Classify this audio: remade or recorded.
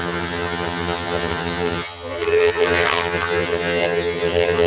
remade